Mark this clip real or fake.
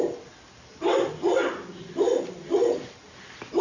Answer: real